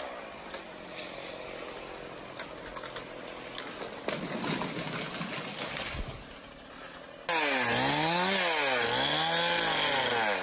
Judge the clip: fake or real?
real